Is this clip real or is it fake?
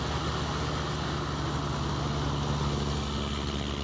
real